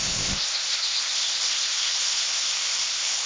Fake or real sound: fake